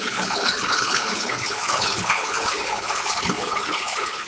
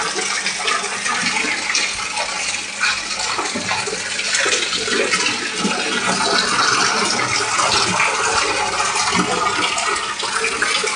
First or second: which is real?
second